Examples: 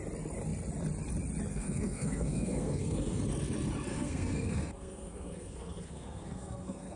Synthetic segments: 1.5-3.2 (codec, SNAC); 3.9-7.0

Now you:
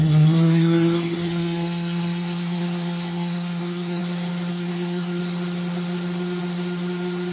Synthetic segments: 0.0-4.0 (codec, SNAC); 4.5-5.2